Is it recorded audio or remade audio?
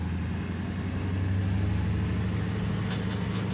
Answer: recorded